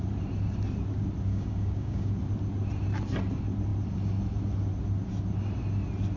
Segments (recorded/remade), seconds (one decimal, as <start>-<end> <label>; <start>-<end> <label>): 0.0-1.3 recorded; 1.3-2.1 remade; 2.1-6.2 recorded